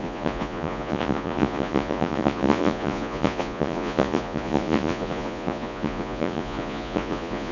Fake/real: fake